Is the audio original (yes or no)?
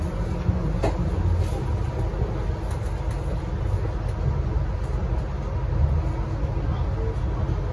yes